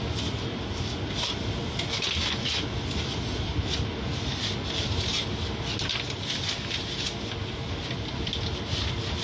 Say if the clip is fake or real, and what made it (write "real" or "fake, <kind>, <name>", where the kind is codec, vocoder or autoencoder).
real